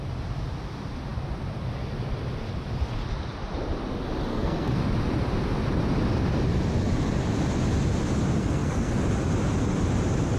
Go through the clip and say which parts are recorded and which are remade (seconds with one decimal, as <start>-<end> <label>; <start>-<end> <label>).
0.0-4.3 recorded; 4.3-4.8 remade; 4.8-8.4 recorded; 8.4-9.0 remade; 9.0-10.4 recorded